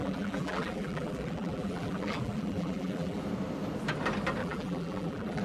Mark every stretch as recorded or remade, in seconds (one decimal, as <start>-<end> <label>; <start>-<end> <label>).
0.0-3.2 remade; 3.2-4.4 recorded; 4.4-5.4 remade